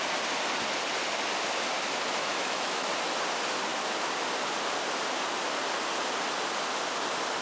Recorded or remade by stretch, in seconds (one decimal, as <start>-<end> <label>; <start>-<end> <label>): 0.0-2.2 recorded; 2.2-2.9 remade; 2.9-7.4 recorded